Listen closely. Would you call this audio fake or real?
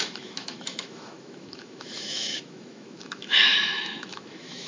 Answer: fake